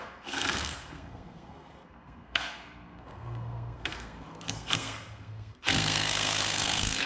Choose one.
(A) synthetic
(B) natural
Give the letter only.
A